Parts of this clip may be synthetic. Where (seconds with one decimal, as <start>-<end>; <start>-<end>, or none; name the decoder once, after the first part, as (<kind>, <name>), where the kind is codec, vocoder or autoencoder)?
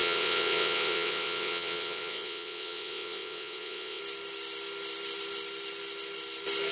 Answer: 0.0-4.0 (vocoder, WaveNeXt)